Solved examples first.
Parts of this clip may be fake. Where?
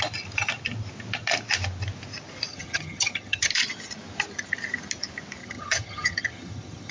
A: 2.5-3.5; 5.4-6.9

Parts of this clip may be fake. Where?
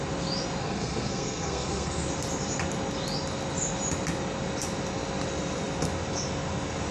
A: 0.6-2.0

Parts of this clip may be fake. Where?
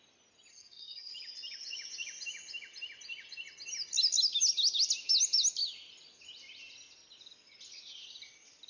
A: 0.5-1.1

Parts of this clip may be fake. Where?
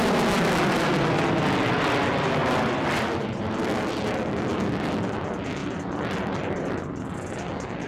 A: 2.4-4.1; 5.6-6.8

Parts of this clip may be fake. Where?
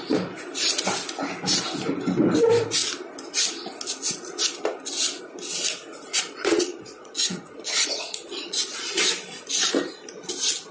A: 6.1-9.0